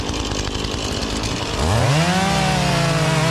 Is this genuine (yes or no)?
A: yes